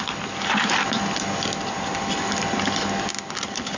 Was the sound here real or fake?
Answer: real